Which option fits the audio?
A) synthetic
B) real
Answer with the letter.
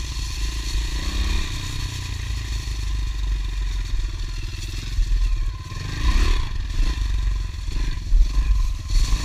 B